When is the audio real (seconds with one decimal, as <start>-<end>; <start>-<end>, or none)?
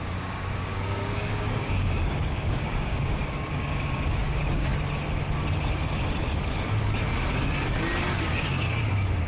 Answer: 4.7-8.9